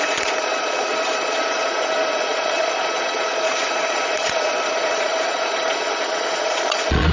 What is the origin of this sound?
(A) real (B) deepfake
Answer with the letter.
B